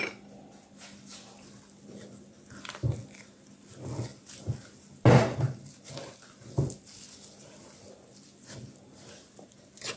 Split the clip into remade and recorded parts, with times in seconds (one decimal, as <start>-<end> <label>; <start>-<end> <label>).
0.0-10.0 recorded